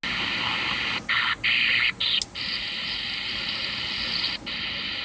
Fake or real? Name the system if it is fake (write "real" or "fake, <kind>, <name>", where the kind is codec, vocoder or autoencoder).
real